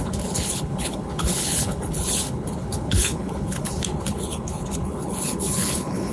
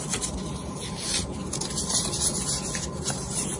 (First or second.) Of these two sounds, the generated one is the first